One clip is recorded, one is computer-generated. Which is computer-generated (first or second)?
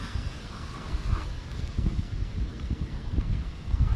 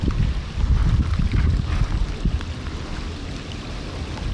first